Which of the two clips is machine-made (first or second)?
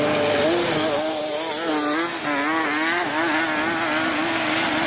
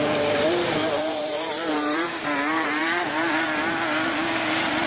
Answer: second